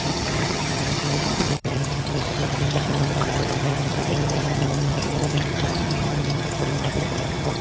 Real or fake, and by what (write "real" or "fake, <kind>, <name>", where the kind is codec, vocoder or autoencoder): fake, vocoder, HiFi-GAN